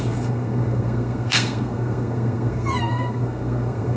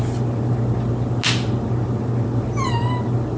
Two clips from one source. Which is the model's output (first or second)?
first